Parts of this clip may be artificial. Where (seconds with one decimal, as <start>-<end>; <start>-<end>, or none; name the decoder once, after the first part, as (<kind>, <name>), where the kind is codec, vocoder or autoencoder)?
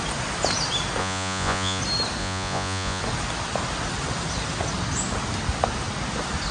1.0-1.8 (vocoder, Vocos); 2.2-3.0